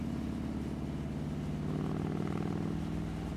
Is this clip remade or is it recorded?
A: recorded